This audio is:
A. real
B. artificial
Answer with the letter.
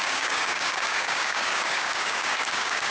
B